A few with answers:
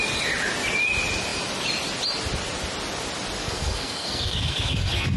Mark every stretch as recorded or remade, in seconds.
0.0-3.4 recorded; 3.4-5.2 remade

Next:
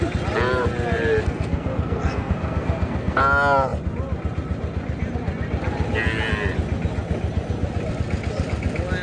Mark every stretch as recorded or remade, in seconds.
0.0-1.2 recorded; 1.2-3.2 remade; 3.2-9.0 recorded

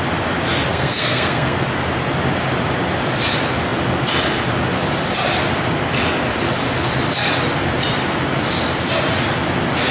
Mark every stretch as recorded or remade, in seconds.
0.0-0.7 recorded; 0.7-1.6 remade; 1.6-9.9 recorded

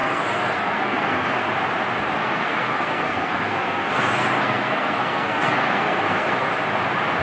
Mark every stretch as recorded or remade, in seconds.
0.0-1.5 remade; 1.5-2.2 recorded; 2.2-6.5 remade; 6.5-7.2 recorded

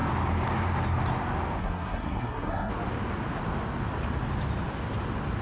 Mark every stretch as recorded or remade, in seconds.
0.0-1.6 recorded; 1.6-2.7 remade; 2.7-5.4 recorded

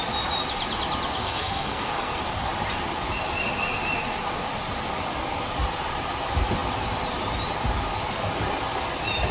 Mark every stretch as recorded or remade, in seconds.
0.0-1.2 recorded; 1.2-2.2 remade; 2.2-9.3 recorded

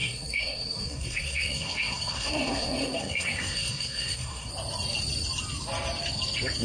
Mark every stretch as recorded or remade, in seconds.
0.0-4.5 remade; 4.5-6.6 recorded

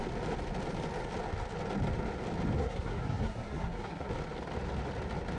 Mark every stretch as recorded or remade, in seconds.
0.0-2.6 recorded; 2.6-4.1 remade; 4.1-5.4 recorded